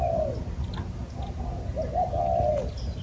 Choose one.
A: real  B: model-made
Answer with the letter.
A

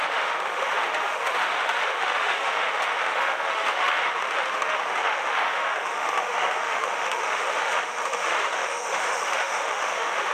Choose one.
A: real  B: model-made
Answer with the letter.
B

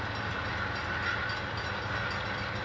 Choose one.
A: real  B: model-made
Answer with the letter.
A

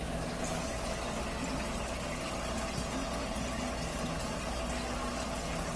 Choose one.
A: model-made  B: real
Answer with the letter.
B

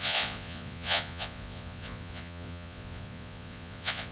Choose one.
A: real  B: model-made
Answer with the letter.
B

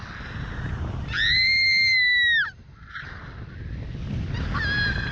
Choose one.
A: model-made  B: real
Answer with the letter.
B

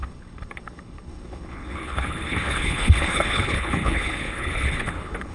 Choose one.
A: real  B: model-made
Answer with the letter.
B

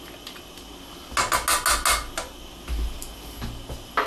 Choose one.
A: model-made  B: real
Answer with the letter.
B